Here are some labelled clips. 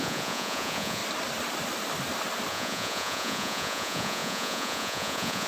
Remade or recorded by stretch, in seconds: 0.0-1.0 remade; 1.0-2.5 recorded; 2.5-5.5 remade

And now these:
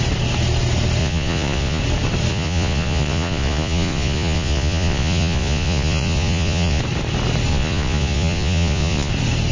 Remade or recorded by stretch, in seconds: 0.0-1.0 recorded; 1.0-1.8 remade; 1.8-2.3 recorded; 2.3-6.8 remade; 6.8-7.5 recorded; 7.5-9.1 remade; 9.1-9.5 recorded

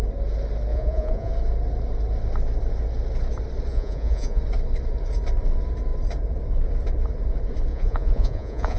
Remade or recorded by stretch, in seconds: 0.0-0.7 recorded; 0.7-1.3 remade; 1.3-3.7 recorded; 3.7-4.4 remade; 4.4-7.7 recorded; 7.7-8.8 remade